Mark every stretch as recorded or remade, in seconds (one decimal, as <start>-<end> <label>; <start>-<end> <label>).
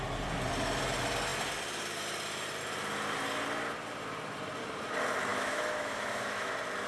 0.0-5.3 recorded; 5.3-6.5 remade; 6.5-6.9 recorded